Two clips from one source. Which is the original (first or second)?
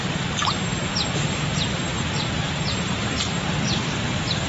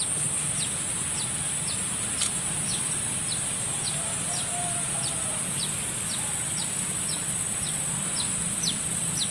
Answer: second